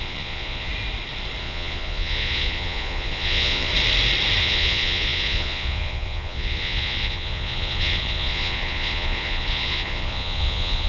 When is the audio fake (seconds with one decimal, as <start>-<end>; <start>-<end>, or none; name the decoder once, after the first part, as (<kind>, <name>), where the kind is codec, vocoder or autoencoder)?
0.0-0.7 (vocoder, Vocos); 1.4-3.7; 4.4-10.9